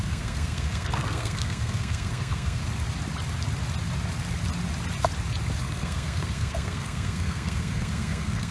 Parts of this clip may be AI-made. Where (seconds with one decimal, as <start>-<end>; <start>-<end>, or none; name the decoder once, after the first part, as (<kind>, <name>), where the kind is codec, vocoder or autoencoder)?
0.0-2.6 (codec, SNAC); 5.6-8.5